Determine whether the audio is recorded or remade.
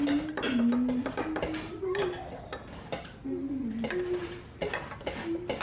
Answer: recorded